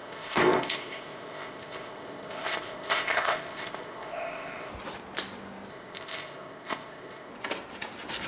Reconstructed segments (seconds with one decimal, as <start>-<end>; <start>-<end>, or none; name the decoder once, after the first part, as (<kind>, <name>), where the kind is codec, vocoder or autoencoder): 0.0-4.7 (codec, ZipCodec); 5.7-7.3